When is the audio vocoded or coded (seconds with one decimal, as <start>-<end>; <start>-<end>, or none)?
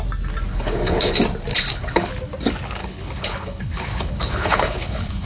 0.5-1.1; 1.5-2.1; 2.8-5.3